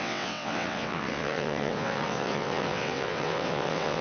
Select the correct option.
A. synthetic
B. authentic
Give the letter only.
A